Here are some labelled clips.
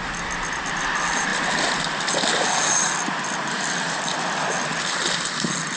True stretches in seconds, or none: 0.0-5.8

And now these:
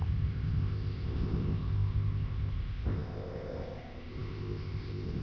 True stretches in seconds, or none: none